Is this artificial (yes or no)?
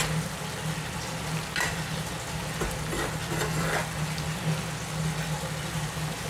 no